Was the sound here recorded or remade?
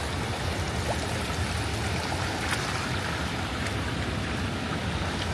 recorded